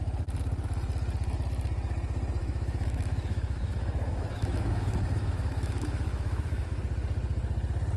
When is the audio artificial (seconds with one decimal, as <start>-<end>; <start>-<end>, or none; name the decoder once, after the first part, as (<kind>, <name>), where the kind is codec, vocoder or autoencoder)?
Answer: 2.4-6.8 (autoencoder, DAC-VAE)

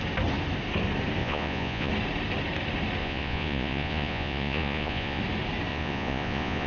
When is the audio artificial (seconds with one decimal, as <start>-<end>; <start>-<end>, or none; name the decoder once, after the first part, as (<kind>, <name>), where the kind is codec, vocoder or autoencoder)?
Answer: 1.2-1.9 (vocoder, Vocos); 3.0-5.2; 5.7-6.7

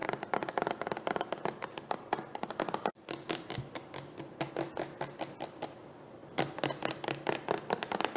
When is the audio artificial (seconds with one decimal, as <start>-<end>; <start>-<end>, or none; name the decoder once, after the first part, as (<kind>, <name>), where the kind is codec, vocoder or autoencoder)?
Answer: none